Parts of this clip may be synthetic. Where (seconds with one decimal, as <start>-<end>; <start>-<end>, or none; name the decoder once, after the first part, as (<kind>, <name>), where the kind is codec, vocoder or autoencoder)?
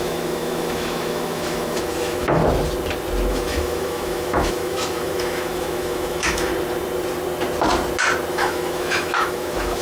0.0-2.4 (autoencoder, DAC-VAE); 3.3-6.5; 8.3-9.8